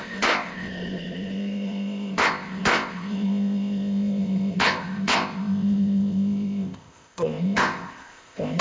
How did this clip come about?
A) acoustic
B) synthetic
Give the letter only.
B